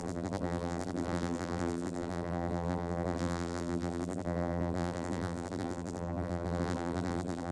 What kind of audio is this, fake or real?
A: fake